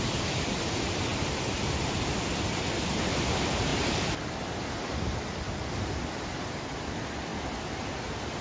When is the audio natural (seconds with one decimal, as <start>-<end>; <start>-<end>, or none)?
3.7-4.8; 7.3-8.4